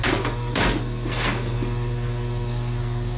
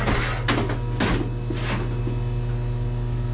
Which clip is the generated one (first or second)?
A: first